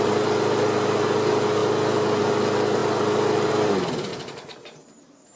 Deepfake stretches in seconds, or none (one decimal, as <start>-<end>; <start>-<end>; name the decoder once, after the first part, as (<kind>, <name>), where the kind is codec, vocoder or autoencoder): 4.1-5.0 (vocoder, BigVGAN v2)